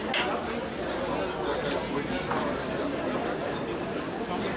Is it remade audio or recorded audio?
recorded